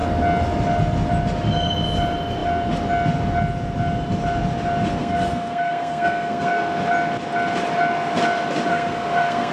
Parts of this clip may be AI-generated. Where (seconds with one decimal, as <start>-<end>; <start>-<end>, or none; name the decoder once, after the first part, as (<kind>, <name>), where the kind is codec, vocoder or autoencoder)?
5.0-6.5 (codec, SNAC); 8.7-9.5